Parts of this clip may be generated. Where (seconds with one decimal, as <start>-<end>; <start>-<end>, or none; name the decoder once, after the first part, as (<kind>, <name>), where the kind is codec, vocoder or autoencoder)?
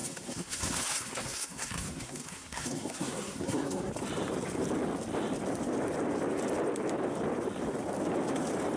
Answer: 0.0-3.9 (codec, SNAC)